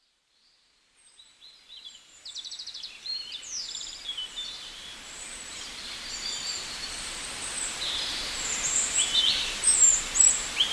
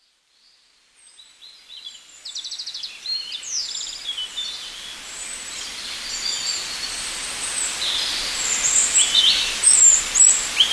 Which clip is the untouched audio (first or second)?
second